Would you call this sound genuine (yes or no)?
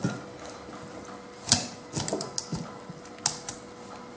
yes